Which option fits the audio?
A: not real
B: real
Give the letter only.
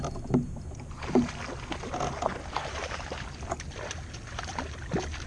B